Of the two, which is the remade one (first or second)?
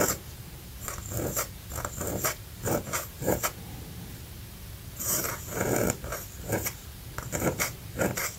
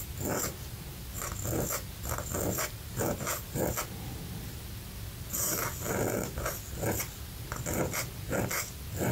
first